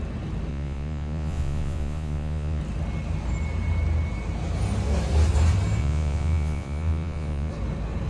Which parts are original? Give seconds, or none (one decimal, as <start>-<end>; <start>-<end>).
0.0-0.5; 2.6-5.8; 7.5-8.1

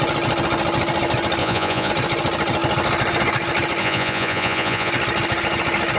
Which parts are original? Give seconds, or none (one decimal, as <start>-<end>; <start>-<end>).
0.0-1.4; 1.9-3.8; 4.9-6.0